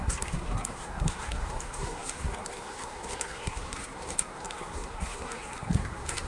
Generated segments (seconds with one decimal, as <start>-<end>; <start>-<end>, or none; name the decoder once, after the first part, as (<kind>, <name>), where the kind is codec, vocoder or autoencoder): 0.0-6.3 (codec, SNAC)